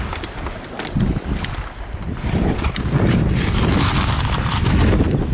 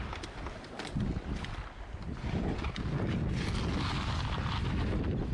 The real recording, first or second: second